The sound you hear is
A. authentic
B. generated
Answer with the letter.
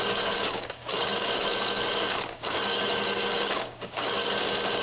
B